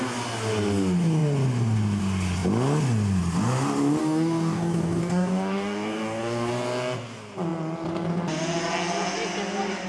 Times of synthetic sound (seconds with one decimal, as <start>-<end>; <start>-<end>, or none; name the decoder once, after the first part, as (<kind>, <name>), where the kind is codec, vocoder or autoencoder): 4.0-6.5 (codec, DAC)